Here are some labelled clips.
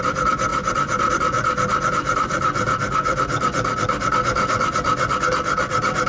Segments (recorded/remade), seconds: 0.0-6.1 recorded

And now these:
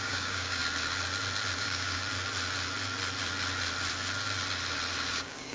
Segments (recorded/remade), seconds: 0.0-0.6 remade; 0.6-1.6 recorded; 1.6-2.0 remade; 2.0-5.1 recorded; 5.1-5.5 remade

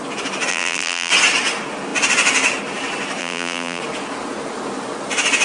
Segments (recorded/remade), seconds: 0.0-0.5 recorded; 0.5-1.1 remade; 1.1-3.2 recorded; 3.2-3.8 remade; 3.8-5.4 recorded

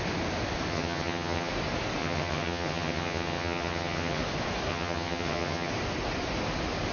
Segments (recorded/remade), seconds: 0.0-0.7 recorded; 0.7-1.5 remade; 1.5-2.0 recorded; 2.0-4.2 remade; 4.2-4.7 recorded; 4.7-5.7 remade; 5.7-6.9 recorded

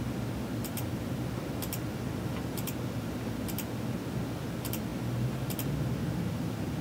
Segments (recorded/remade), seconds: 0.0-6.8 recorded

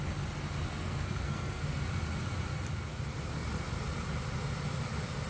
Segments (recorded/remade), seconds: 0.0-0.8 recorded; 0.8-1.8 remade; 1.8-5.3 recorded

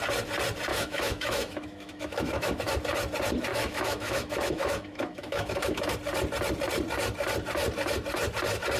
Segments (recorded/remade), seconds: 0.0-0.7 recorded; 0.7-2.6 remade; 2.6-3.5 recorded; 3.5-5.9 remade; 5.9-8.8 recorded

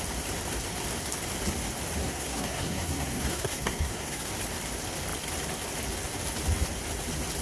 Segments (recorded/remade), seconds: 0.0-2.0 recorded; 2.0-4.3 remade; 4.3-7.4 recorded